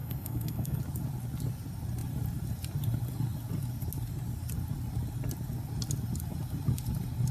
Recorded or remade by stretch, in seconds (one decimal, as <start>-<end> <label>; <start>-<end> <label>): 0.0-0.8 remade; 0.8-7.3 recorded